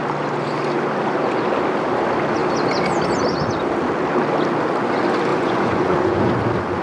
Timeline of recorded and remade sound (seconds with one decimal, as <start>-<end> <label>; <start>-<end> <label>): 0.0-5.3 recorded; 5.3-6.3 remade; 6.3-6.8 recorded

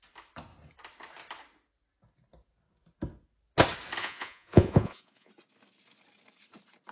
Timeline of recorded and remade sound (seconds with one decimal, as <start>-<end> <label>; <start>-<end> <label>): 0.0-4.0 recorded; 4.0-5.3 remade; 5.3-6.9 recorded

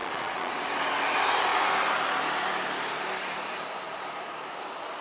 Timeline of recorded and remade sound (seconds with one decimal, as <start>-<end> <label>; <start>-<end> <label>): 0.0-0.5 remade; 0.5-5.0 recorded